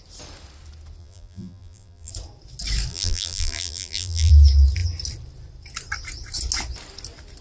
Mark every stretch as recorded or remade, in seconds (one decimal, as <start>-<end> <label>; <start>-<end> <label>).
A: 0.0-1.0 recorded; 1.0-2.1 remade; 2.1-2.9 recorded; 2.9-4.3 remade; 4.3-7.4 recorded